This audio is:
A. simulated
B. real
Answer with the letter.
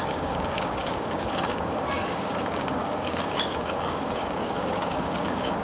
A